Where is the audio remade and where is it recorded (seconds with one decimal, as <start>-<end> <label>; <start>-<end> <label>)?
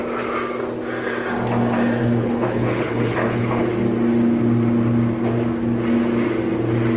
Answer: 0.0-2.0 recorded; 2.0-3.7 remade; 3.7-7.0 recorded